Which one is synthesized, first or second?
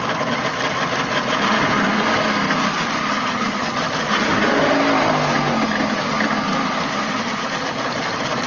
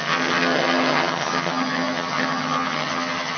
second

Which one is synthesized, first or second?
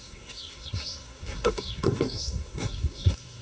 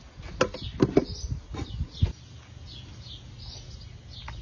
first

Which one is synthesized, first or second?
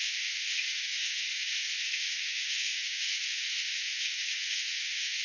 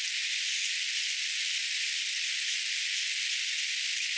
first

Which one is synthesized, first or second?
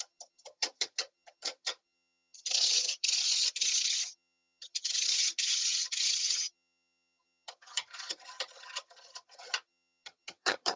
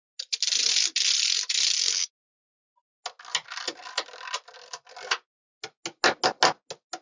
first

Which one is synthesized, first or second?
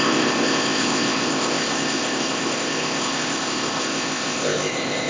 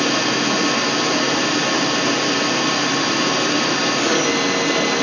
first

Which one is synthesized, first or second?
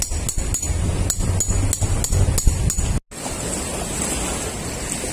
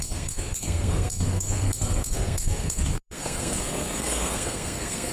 second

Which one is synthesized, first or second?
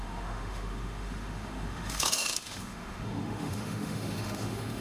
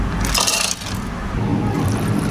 first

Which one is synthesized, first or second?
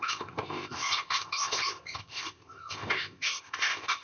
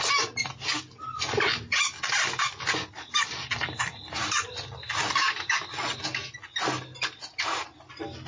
first